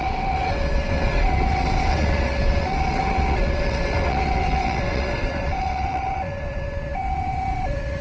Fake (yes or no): yes